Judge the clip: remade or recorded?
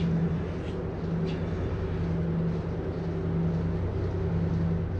recorded